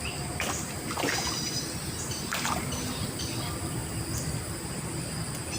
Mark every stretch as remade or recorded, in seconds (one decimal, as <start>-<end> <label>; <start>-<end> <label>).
0.0-5.6 recorded

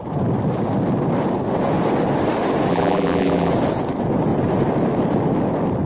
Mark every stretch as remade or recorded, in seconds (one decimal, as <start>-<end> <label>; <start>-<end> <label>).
0.0-2.7 recorded; 2.7-3.5 remade; 3.5-5.9 recorded